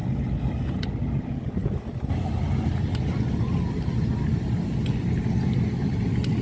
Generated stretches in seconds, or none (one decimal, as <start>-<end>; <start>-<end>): none